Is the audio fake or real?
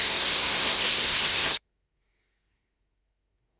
fake